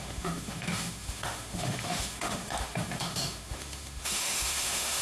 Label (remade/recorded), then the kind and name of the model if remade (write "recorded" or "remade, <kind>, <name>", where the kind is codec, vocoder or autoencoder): remade, autoencoder, DAC-VAE